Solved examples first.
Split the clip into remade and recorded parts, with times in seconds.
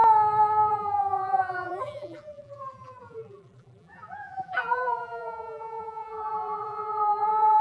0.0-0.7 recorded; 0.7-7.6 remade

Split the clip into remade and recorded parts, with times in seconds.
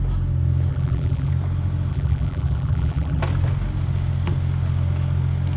0.0-0.7 recorded; 0.7-1.3 remade; 1.3-1.9 recorded; 1.9-3.2 remade; 3.2-5.6 recorded